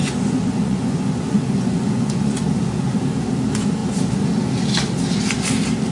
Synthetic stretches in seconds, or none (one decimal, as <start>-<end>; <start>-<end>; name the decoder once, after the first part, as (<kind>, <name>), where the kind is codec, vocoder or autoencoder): 0.0-2.4 (vocoder, Vocos)